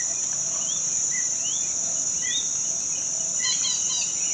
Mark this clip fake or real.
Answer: real